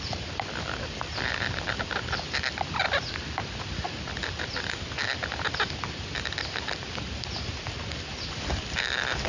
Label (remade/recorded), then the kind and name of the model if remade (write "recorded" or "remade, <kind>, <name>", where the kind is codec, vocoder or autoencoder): remade, vocoder, BigVGAN v2